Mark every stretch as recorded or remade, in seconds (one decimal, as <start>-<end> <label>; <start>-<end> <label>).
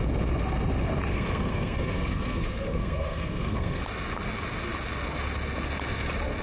0.0-1.1 recorded; 1.1-3.8 remade; 3.8-6.4 recorded